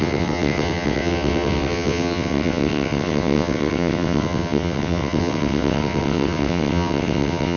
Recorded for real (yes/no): no